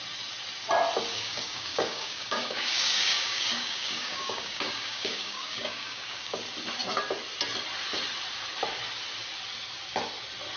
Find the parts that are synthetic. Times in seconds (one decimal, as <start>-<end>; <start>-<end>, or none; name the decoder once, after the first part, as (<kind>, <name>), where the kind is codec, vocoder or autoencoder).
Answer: 1.1-6.4 (codec, DAC)